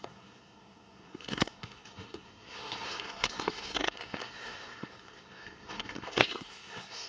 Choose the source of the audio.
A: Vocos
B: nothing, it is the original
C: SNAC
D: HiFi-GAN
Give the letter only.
C